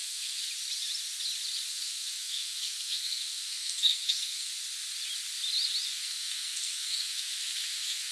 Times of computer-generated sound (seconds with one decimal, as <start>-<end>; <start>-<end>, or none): 0.0-0.5; 1.7-4.5; 5.9-8.1